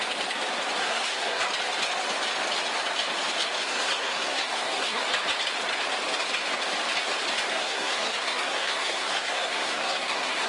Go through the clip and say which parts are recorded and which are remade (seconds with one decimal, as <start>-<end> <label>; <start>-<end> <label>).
0.0-0.8 recorded; 0.8-1.4 remade; 1.4-3.7 recorded; 3.7-5.0 remade; 5.0-7.5 recorded; 7.5-10.5 remade